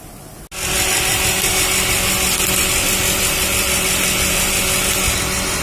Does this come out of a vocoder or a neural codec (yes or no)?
no